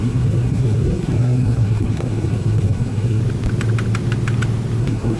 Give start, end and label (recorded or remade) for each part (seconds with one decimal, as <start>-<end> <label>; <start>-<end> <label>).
0.0-3.2 remade; 3.2-4.8 recorded; 4.8-5.2 remade